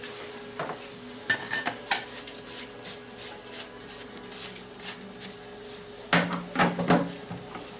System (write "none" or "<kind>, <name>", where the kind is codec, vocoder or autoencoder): none